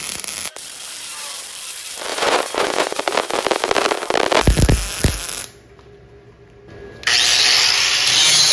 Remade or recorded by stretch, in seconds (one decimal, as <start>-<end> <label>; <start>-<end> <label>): 0.0-2.1 recorded; 2.1-3.0 remade; 3.0-8.5 recorded